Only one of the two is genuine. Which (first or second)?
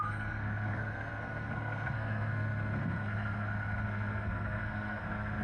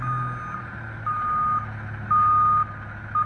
second